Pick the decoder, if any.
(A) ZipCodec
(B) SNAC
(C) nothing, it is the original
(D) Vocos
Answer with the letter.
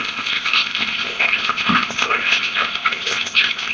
A